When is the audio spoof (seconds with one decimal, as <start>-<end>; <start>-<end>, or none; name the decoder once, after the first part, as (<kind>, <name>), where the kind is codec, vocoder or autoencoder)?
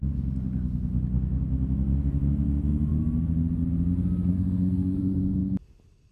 4.3-5.0 (codec, SNAC)